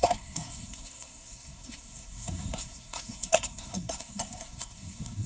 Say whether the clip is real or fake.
fake